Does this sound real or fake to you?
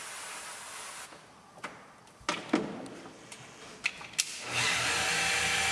real